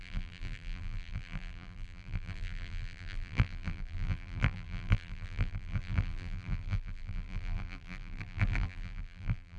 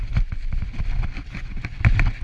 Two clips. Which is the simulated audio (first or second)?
first